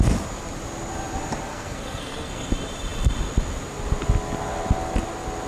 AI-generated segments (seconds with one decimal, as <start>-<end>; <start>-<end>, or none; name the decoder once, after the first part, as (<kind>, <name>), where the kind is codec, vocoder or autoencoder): 1.5-2.5 (codec, SNAC)